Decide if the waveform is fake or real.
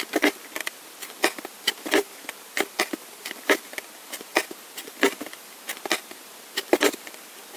real